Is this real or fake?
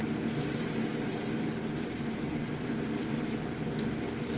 real